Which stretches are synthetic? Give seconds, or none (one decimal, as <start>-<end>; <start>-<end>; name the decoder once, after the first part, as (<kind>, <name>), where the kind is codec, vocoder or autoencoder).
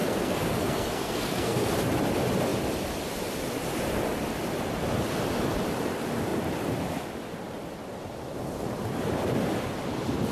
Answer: 0.0-1.7 (codec, SNAC)